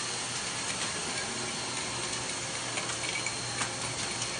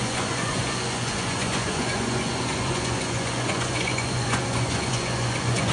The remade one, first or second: second